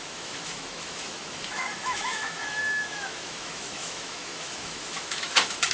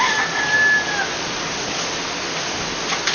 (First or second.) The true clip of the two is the second